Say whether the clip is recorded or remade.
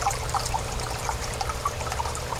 remade